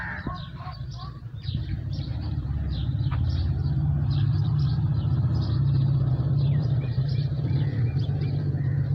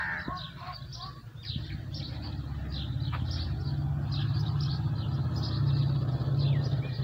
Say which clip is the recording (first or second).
second